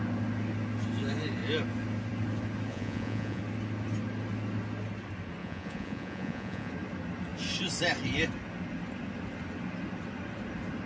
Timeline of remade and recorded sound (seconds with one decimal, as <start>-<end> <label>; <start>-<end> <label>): 0.0-2.7 recorded; 2.7-3.4 remade; 3.4-5.4 recorded; 5.4-6.7 remade; 6.7-10.9 recorded

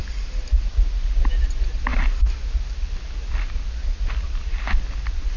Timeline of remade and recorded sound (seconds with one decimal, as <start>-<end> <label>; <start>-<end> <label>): 0.0-5.4 recorded

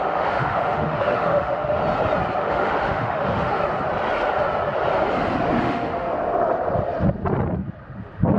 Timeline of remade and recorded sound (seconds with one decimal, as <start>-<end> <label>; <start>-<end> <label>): 0.0-1.8 remade; 1.8-2.4 recorded; 2.4-3.6 remade; 3.6-5.6 recorded; 5.6-6.1 remade; 6.1-8.4 recorded

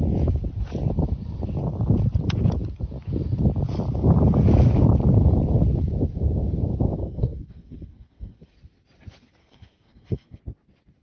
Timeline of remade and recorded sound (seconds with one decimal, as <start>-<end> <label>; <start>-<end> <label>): 0.0-7.0 recorded; 7.0-8.5 remade; 8.5-9.4 recorded; 9.4-10.4 remade; 10.4-11.0 recorded